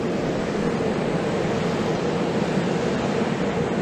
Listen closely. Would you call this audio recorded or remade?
recorded